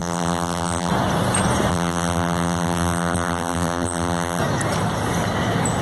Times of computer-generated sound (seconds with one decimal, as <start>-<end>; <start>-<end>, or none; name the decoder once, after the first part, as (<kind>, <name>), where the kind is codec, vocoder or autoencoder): 0.0-0.9 (vocoder, BigVGAN v2); 1.7-4.4